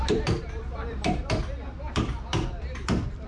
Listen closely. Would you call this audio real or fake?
fake